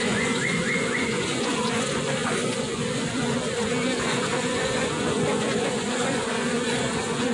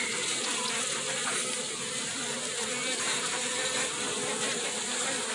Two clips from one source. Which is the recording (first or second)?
second